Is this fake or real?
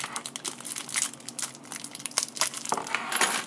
real